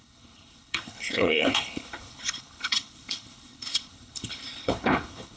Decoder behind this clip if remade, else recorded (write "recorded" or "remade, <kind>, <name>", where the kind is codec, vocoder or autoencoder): remade, codec, HILCodec